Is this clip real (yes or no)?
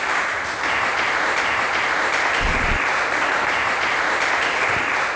yes